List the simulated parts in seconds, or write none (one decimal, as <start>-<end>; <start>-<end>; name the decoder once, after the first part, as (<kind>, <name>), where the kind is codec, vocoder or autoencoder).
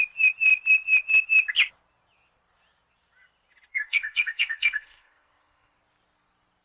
3.7-5.7 (codec, SNAC)